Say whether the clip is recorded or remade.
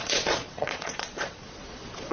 remade